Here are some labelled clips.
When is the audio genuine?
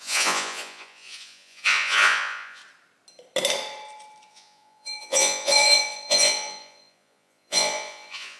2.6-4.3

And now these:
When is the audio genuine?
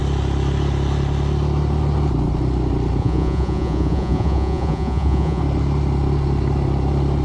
0.0-3.0; 5.4-7.2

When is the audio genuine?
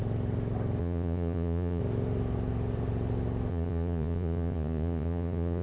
0.0-0.8; 1.8-3.5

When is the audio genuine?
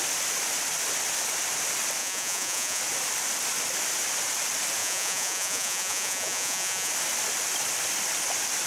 0.0-2.0; 2.8-4.8; 6.9-8.7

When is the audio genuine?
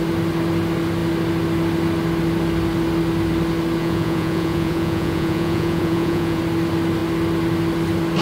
0.0-3.8; 6.4-8.2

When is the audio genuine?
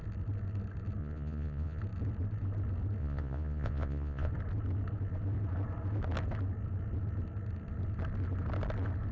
0.0-1.0; 1.8-3.0; 4.3-9.1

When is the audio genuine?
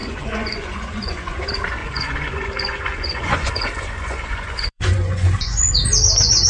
1.4-1.8; 5.7-6.5